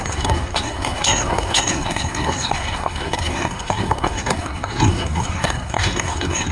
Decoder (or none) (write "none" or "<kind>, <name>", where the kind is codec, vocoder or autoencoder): codec, SNAC